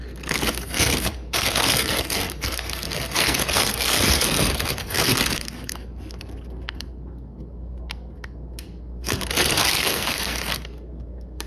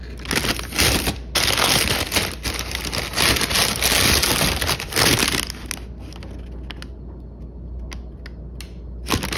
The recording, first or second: second